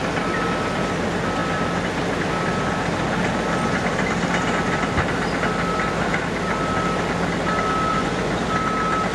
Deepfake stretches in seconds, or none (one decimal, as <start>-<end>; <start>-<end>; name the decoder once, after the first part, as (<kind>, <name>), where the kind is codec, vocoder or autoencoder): 7.9-8.4 (vocoder, Vocos)